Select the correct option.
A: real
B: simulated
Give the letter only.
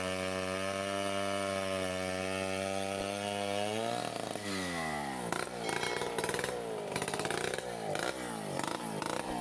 A